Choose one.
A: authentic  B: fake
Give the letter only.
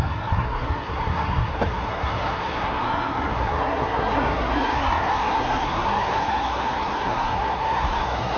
B